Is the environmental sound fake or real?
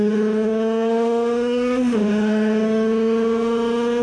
fake